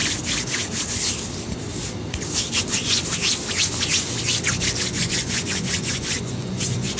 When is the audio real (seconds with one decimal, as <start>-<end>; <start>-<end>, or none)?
0.0-2.6; 3.0-4.9